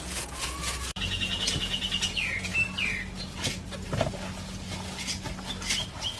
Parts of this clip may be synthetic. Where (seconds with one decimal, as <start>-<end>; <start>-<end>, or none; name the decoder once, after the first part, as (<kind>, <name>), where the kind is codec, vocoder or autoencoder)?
0.0-2.5 (vocoder, Vocos)